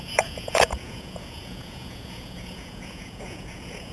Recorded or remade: remade